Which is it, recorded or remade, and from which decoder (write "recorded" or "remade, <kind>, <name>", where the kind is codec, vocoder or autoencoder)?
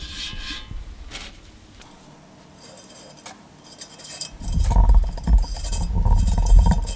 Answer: recorded